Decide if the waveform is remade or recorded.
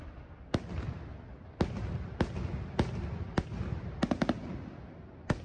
recorded